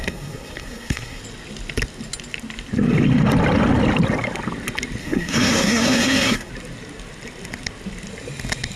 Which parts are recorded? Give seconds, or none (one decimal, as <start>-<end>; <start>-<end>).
1.2-5.0; 6.5-8.8